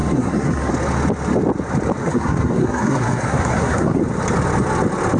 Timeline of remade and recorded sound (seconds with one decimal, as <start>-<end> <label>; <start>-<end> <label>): 0.0-0.7 remade; 0.7-2.0 recorded; 2.0-4.0 remade; 4.0-5.2 recorded